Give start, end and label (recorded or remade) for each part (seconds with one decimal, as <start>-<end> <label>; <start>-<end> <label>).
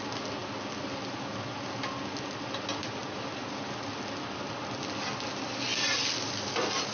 0.0-6.9 recorded